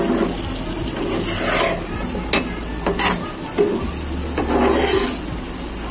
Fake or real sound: real